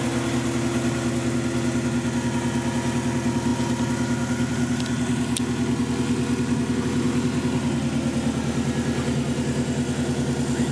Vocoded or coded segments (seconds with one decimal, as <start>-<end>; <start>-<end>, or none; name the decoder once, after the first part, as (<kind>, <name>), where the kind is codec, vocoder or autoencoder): none